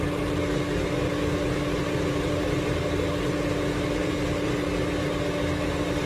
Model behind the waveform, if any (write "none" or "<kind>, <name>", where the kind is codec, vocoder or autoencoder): none